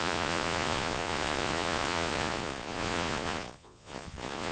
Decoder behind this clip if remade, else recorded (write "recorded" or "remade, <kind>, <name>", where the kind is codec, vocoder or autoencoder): remade, vocoder, Vocos